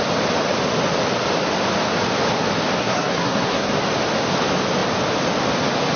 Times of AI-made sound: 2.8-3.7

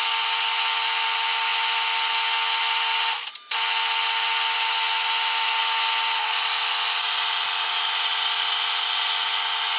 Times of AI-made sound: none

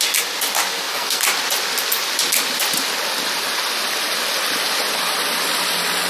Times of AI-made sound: 0.7-1.2